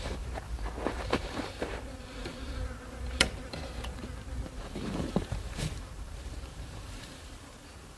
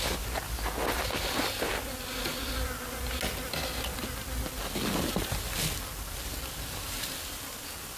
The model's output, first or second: first